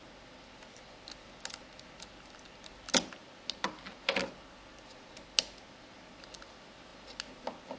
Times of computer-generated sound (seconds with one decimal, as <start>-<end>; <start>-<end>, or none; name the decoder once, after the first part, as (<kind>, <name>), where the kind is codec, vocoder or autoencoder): none